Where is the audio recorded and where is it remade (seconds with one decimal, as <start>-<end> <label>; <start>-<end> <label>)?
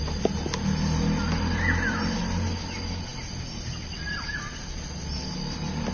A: 0.0-5.9 recorded